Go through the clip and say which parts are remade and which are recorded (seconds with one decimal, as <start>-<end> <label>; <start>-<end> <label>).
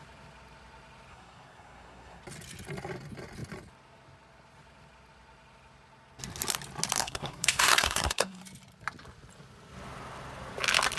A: 0.0-1.1 recorded; 1.1-2.2 remade; 2.2-7.0 recorded; 7.0-8.4 remade; 8.4-11.0 recorded